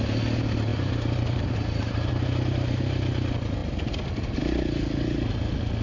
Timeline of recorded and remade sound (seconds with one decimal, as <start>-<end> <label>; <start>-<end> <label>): 0.0-0.7 recorded; 0.7-2.1 remade; 2.1-5.8 recorded